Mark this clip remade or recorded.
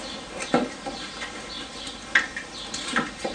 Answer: recorded